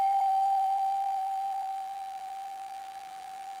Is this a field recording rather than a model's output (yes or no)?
no